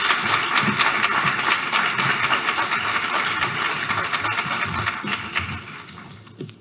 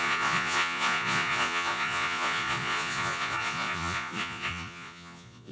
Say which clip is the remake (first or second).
second